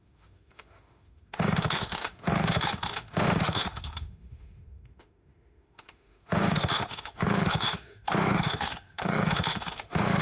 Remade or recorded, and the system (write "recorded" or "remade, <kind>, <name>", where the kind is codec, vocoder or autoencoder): remade, autoencoder, DAC-VAE